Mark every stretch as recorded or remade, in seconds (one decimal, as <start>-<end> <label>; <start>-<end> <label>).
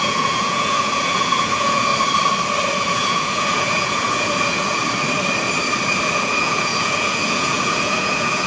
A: 0.0-1.9 remade; 1.9-2.8 recorded; 2.8-4.8 remade; 4.8-6.0 recorded; 6.0-8.5 remade